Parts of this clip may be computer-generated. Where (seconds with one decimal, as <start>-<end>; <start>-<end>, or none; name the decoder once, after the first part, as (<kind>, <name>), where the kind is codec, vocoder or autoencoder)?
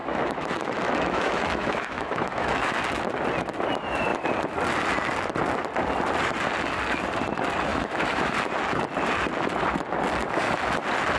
0.0-2.8 (autoencoder, DAC-VAE); 7.7-8.3